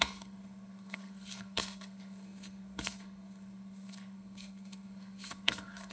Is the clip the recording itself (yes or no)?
no